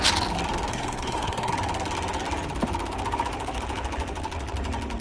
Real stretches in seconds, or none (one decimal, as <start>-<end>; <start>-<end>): 0.0-0.7; 1.5-5.0